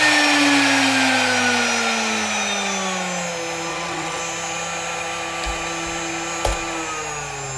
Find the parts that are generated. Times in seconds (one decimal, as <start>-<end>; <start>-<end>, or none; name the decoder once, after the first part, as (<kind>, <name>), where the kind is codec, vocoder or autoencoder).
3.7-4.2 (vocoder, WaveNeXt)